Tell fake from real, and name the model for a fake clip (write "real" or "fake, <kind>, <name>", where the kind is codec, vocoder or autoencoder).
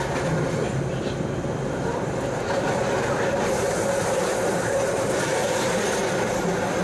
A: real